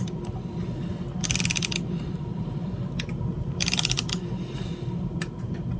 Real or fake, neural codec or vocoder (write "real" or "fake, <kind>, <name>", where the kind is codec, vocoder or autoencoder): real